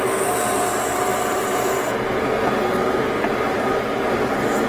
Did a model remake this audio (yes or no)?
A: no